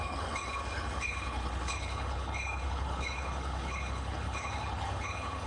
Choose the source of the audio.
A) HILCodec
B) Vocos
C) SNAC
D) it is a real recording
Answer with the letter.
A